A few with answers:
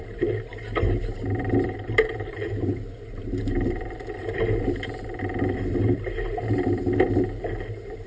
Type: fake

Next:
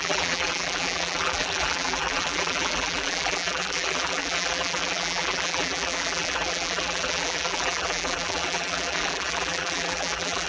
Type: fake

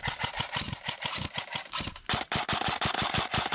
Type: fake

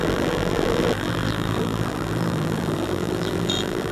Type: fake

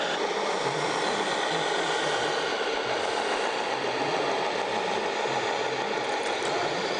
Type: fake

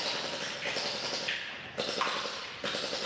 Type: real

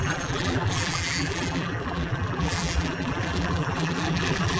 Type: fake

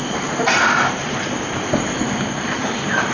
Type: fake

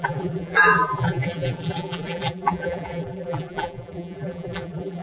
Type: fake